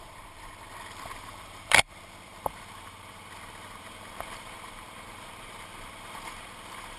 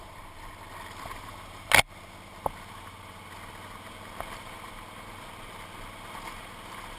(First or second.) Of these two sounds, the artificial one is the first